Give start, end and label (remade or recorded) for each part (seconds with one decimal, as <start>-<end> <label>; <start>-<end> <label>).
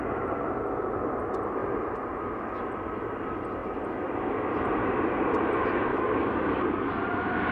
0.0-5.9 recorded; 5.9-6.9 remade; 6.9-7.5 recorded